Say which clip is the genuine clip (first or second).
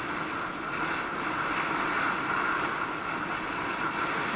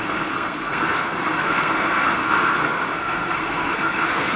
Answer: first